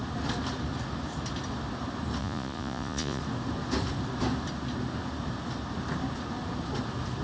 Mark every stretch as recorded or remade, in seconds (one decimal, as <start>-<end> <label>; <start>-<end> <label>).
0.0-2.2 recorded; 2.2-3.2 remade; 3.2-7.2 recorded